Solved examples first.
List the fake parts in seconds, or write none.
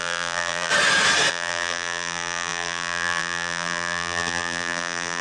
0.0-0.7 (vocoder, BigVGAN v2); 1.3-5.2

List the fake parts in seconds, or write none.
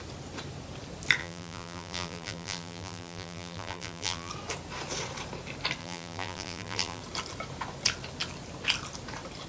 1.2-4.3 (vocoder, BigVGAN v2); 5.8-7.0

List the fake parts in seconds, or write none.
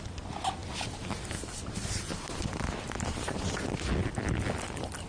none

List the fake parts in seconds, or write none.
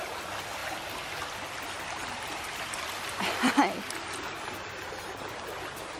none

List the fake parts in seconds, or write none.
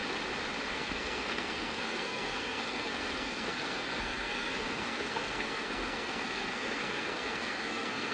0.7-8.1 (codec, SNAC)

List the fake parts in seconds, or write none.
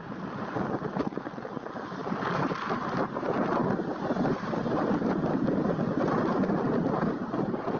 2.0-2.7 (vocoder, BigVGAN v2); 3.6-7.8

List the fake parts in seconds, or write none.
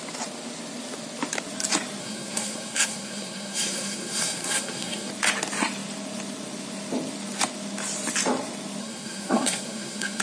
2.0-5.1 (codec, SNAC); 8.8-10.2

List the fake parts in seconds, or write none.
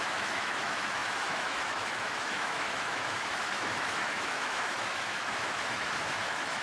0.0-6.6 (autoencoder, DAC-VAE)